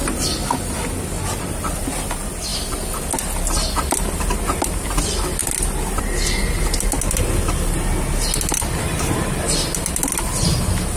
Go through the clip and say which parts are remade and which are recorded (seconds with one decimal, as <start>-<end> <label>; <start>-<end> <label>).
0.0-11.0 recorded